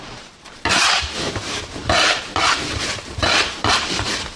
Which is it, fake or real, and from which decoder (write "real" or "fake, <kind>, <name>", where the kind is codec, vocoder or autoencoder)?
fake, vocoder, BigVGAN v2